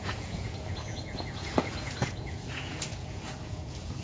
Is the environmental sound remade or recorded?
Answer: remade